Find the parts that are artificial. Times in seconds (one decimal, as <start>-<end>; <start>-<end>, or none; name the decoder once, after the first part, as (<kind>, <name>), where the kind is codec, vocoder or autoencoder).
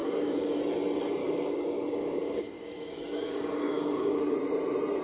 0.0-0.6 (codec, DAC); 1.2-4.2